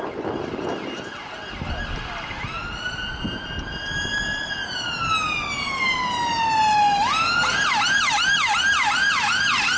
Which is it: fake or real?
real